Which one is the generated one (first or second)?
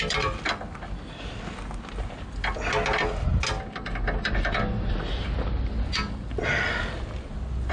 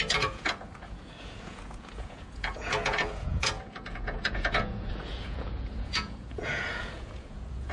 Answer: second